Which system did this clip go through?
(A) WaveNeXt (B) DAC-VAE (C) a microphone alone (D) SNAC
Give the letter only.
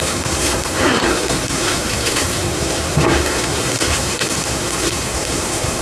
D